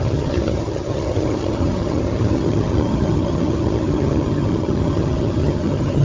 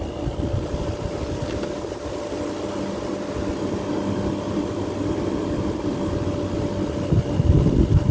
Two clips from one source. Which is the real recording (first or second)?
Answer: second